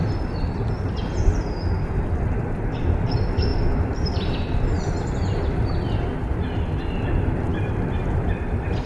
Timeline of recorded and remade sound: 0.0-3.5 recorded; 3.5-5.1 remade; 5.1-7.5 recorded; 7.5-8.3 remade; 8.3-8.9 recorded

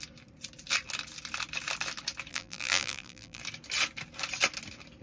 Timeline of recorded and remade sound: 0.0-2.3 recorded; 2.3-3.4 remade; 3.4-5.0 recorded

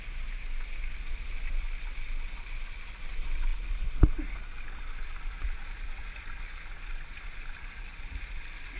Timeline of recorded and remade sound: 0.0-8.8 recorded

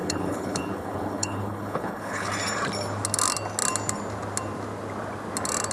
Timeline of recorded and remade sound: 0.0-2.3 remade; 2.3-5.7 recorded

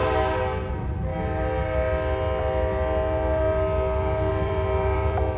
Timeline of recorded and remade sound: 0.0-0.7 recorded; 0.7-1.1 remade; 1.1-4.3 recorded; 4.3-5.4 remade